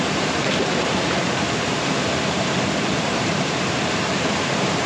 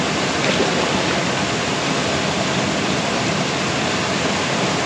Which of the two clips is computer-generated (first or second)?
first